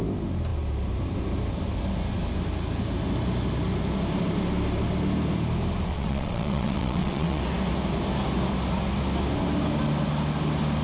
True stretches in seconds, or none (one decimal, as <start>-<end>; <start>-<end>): 0.0-5.9; 7.4-10.8